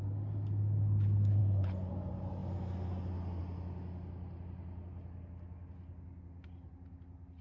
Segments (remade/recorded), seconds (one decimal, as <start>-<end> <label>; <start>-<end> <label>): 0.0-1.4 recorded; 1.4-1.9 remade; 1.9-7.4 recorded